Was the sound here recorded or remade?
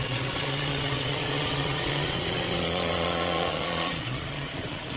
remade